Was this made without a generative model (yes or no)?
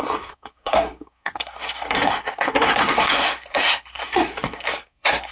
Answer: no